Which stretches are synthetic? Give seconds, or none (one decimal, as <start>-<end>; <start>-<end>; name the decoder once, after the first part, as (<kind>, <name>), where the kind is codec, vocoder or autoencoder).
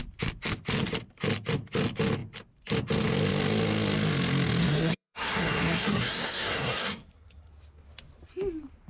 4.6-7.5 (codec, SNAC)